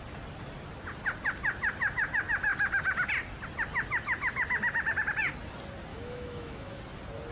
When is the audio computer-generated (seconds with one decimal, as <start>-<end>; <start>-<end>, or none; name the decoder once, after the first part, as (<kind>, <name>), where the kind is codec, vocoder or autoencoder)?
5.9-6.8 (autoencoder, DAC-VAE)